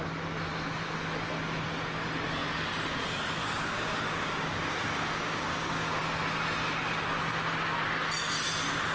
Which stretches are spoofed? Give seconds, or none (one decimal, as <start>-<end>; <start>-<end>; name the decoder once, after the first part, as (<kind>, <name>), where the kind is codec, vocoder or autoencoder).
3.4-6.0 (codec, DAC)